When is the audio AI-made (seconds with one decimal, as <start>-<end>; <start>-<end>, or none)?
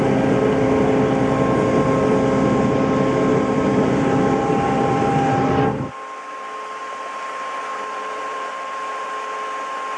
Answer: 3.3-5.9; 7.7-9.1